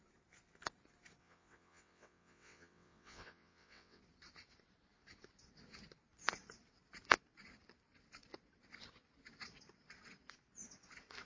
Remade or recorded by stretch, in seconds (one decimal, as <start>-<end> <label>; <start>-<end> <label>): 0.0-1.2 recorded; 1.2-4.0 remade; 4.0-11.3 recorded